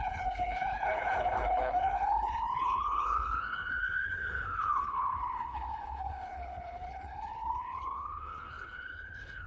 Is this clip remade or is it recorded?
remade